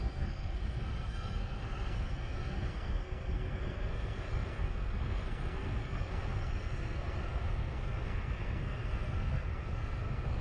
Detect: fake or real fake